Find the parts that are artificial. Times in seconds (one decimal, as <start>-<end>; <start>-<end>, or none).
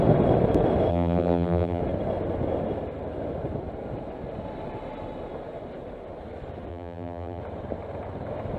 0.9-1.8; 6.7-7.4